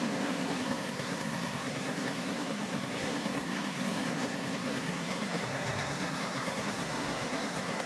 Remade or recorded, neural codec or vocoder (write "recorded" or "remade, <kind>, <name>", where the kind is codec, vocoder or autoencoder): remade, codec, SNAC